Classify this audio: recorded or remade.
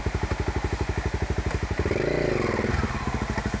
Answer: recorded